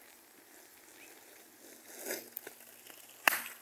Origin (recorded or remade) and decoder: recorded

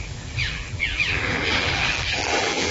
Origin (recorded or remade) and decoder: remade, vocoder, BigVGAN v2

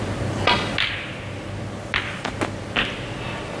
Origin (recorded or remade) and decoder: recorded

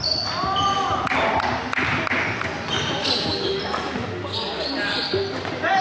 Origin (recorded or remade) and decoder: recorded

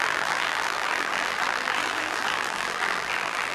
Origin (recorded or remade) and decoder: remade, vocoder, BigVGAN v2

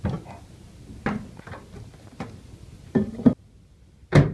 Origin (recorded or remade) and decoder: recorded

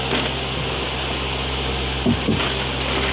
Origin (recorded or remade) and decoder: recorded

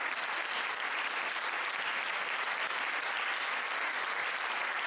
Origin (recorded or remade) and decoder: recorded